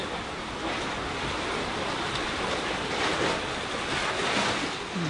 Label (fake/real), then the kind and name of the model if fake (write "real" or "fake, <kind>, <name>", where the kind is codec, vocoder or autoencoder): real